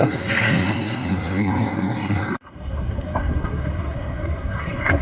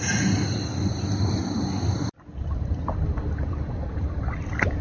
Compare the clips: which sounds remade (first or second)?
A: first